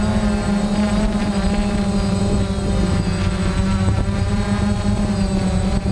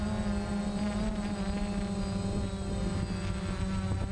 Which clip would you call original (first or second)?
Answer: second